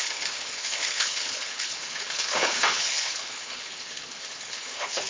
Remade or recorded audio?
remade